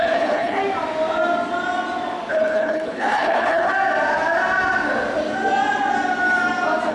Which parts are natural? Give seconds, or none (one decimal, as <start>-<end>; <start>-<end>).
0.6-2.3; 3.7-6.9